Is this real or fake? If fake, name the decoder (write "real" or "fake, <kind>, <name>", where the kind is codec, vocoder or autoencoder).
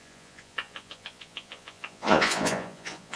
fake, vocoder, Vocos